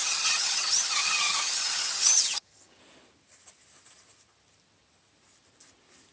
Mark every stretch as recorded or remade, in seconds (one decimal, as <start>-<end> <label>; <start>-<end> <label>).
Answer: 0.0-2.8 remade; 2.8-6.1 recorded